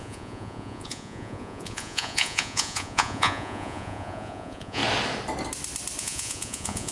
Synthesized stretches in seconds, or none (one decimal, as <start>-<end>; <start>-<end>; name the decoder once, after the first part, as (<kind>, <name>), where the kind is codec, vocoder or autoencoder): 0.0-4.8 (vocoder, Vocos); 6.0-6.9

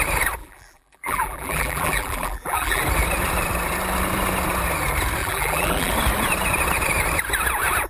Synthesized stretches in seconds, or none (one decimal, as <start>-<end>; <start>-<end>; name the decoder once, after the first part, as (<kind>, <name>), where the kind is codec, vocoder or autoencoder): 0.4-2.8 (vocoder, BigVGAN v2); 5.2-5.9

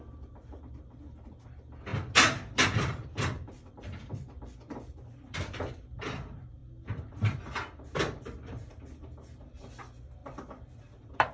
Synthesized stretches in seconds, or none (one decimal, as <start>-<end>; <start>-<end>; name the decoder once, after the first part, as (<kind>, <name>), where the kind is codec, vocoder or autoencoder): none

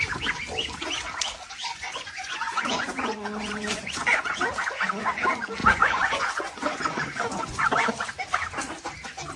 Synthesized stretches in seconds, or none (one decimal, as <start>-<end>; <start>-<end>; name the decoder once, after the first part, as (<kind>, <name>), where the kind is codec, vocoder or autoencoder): 1.6-4.2 (vocoder, Vocos); 5.6-7.6

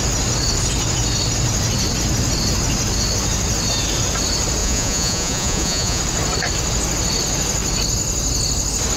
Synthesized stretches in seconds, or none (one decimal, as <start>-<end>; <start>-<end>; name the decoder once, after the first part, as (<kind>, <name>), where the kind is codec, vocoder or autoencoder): 4.6-6.0 (vocoder, Vocos)